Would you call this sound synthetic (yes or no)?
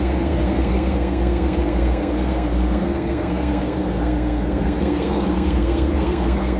yes